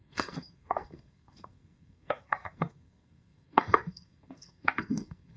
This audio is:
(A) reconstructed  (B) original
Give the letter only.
A